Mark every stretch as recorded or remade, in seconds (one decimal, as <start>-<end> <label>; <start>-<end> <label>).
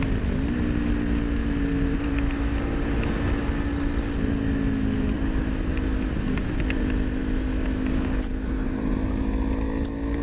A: 0.0-10.2 recorded